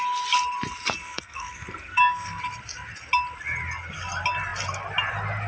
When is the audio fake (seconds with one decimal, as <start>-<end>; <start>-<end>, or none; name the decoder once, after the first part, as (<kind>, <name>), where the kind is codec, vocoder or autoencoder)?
1.0-2.4 (codec, SNAC)